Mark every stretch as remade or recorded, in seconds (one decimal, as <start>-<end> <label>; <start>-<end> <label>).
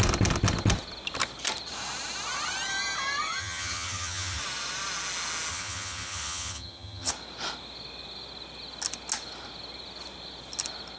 0.0-3.4 recorded; 3.4-4.4 remade; 4.4-5.5 recorded; 5.5-7.1 remade; 7.1-11.0 recorded